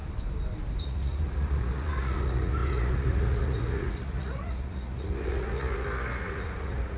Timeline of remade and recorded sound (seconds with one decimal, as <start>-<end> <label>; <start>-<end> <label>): 0.0-0.8 recorded; 0.8-7.0 remade